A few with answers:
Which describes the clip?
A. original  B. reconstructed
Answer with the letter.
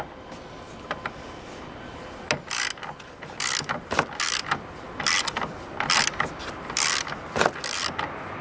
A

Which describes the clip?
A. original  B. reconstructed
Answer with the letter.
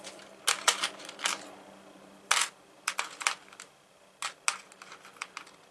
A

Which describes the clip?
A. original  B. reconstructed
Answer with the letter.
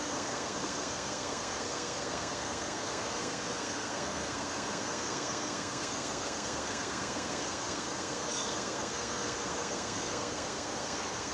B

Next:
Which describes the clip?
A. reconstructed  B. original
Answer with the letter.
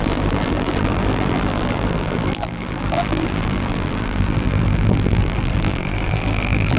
A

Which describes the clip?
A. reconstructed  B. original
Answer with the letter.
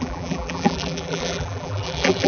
A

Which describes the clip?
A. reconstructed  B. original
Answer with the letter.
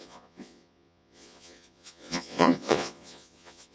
A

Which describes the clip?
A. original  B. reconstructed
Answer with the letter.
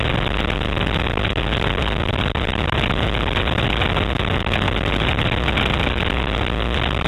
A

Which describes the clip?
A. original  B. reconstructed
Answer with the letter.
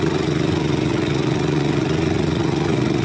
B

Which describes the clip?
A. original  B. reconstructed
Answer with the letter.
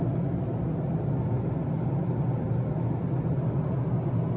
B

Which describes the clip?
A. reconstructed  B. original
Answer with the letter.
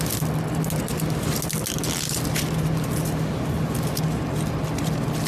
B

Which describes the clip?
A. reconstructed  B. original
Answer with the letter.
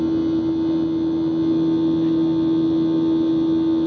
B